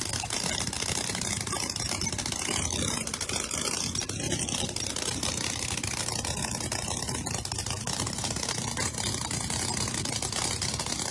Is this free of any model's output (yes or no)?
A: yes